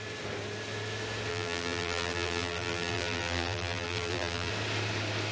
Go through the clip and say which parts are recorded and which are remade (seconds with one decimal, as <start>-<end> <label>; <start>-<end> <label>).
0.0-1.3 recorded; 1.3-4.5 remade; 4.5-5.3 recorded